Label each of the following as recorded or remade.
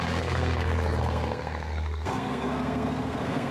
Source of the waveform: remade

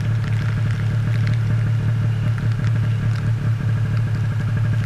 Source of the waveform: recorded